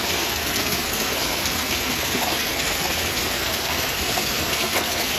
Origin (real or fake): fake